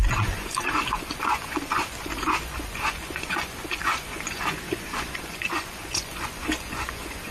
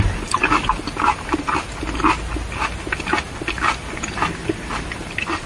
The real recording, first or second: second